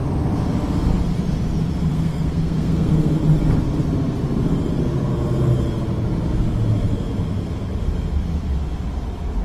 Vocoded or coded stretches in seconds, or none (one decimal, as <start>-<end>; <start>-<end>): 1.9-3.1